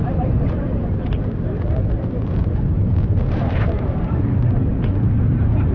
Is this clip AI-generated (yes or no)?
yes